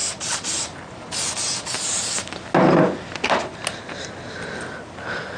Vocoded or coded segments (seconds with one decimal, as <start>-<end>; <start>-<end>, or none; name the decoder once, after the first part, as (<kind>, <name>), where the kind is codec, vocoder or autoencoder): none